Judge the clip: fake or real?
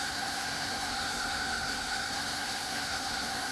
fake